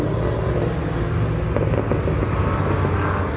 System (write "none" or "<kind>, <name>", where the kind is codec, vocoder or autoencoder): none